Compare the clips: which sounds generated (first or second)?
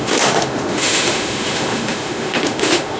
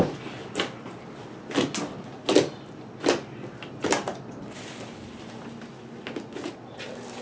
first